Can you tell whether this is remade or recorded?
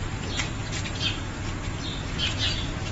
recorded